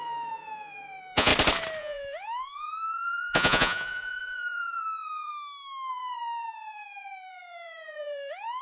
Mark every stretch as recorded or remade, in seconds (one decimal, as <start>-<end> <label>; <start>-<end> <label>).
0.0-1.3 remade; 1.3-1.8 recorded; 1.8-5.3 remade; 5.3-5.9 recorded; 5.9-8.6 remade